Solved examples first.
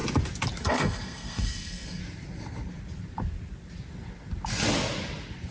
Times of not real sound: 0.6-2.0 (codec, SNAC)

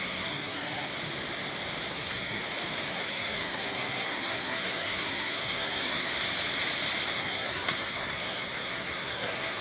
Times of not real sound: 0.0-0.9 (codec, SNAC); 1.9-2.4; 2.9-6.1; 7.1-9.6

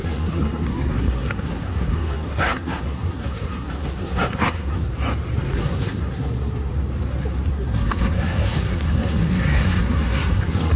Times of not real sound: 0.0-4.9 (codec, SNAC); 5.5-6.7; 7.5-10.8

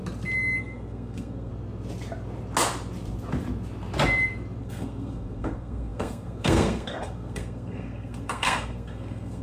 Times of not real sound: 0.6-1.5 (codec, SNAC); 4.6-9.4

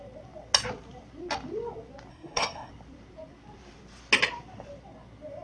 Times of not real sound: 2.1-2.7 (codec, SNAC)

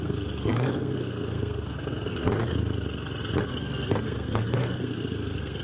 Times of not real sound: 0.0-2.2 (codec, SNAC); 3.4-5.6

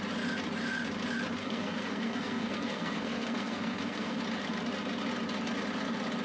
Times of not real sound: 1.4-4.2 (codec, SNAC)

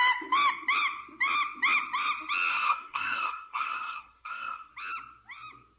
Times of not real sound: 2.5-4.7 (codec, SNAC)